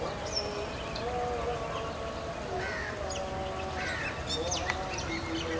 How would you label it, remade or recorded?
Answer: recorded